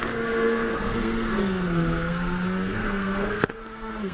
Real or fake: fake